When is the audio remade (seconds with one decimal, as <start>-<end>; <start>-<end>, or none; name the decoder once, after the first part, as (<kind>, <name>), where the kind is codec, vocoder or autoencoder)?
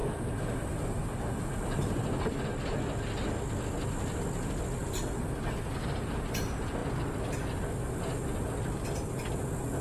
0.0-2.3 (vocoder, BigVGAN v2); 4.8-5.3